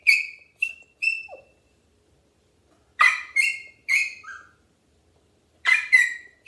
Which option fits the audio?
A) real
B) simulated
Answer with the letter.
A